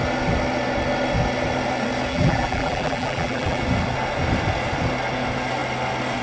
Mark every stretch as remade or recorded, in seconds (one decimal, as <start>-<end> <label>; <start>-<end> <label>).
0.0-2.1 recorded; 2.1-3.6 remade; 3.6-6.2 recorded